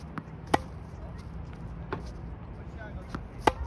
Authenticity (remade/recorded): recorded